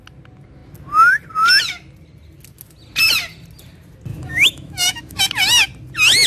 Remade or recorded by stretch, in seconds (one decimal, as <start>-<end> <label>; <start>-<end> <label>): 0.0-4.1 recorded; 4.1-5.2 remade; 5.2-6.3 recorded

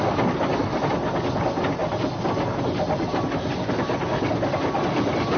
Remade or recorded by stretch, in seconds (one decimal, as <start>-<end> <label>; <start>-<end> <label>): 0.0-5.4 recorded

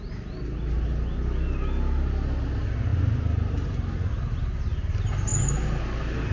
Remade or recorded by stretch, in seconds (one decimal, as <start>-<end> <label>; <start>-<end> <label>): 0.0-6.3 recorded

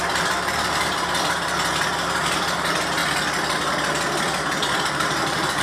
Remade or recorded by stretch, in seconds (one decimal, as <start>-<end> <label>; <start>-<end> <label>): 0.0-3.0 remade; 3.0-4.9 recorded; 4.9-5.6 remade

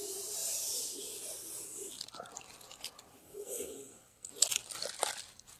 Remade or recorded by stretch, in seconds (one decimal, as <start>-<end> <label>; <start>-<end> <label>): 0.0-3.2 recorded; 3.2-4.3 remade; 4.3-5.6 recorded

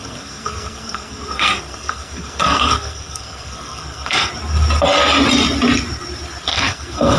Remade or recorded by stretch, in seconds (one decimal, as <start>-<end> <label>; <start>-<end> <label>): 0.0-4.3 remade; 4.3-6.5 recorded; 6.5-7.2 remade

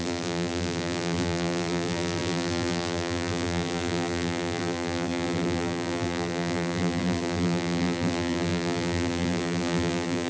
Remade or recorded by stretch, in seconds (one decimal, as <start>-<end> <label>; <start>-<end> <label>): 0.0-10.3 remade

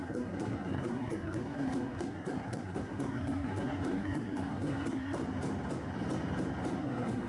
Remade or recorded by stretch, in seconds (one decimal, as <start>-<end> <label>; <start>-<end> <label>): 0.0-5.2 remade; 5.2-6.8 recorded; 6.8-7.3 remade